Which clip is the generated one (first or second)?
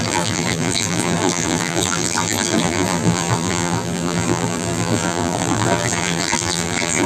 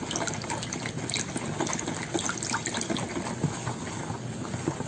first